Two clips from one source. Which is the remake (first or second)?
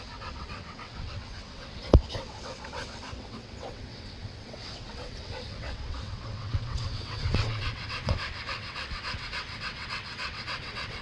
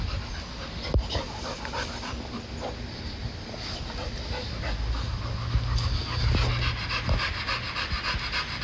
first